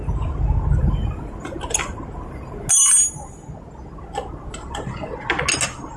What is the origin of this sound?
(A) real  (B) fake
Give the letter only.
A